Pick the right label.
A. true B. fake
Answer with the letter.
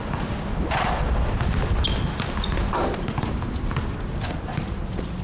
A